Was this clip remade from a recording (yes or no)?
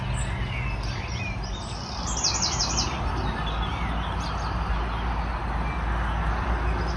no